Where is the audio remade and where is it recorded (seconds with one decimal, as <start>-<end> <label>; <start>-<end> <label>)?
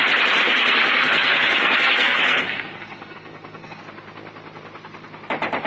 0.0-0.4 recorded; 0.4-3.8 remade; 3.8-5.7 recorded